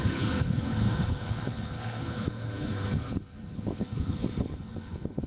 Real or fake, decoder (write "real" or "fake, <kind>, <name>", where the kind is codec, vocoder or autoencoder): fake, codec, HILCodec